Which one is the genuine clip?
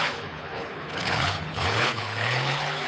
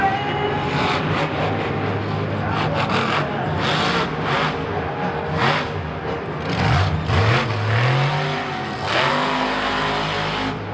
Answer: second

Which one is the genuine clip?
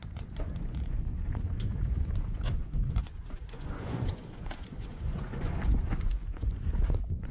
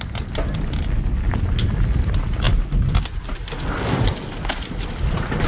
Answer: second